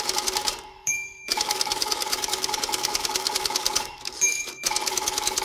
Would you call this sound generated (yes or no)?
yes